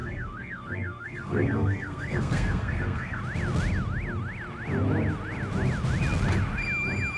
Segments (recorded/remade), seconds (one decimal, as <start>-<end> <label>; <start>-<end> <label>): 0.0-3.2 remade; 3.2-7.2 recorded